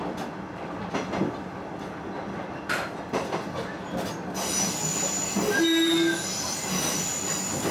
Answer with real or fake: real